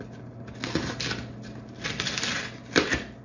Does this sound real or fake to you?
real